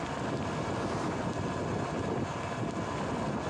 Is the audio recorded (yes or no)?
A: yes